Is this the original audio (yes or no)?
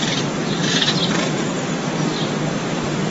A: yes